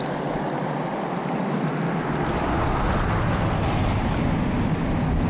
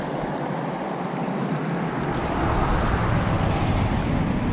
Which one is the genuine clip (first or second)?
first